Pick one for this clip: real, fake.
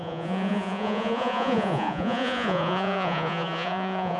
fake